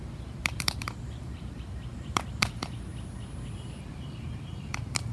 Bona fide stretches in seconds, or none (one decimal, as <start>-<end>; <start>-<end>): 2.9-3.9